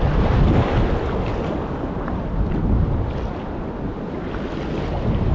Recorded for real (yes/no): yes